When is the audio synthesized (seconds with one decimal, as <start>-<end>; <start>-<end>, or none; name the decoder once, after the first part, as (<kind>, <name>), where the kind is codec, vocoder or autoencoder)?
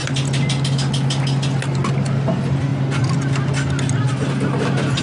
none